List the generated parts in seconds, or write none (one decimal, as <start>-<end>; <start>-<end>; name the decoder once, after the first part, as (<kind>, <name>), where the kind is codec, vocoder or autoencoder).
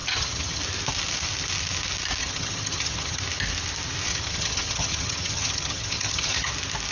0.0-0.6 (vocoder, HiFi-GAN); 2.2-3.2; 4.1-6.5